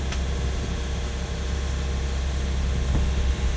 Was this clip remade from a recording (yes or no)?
no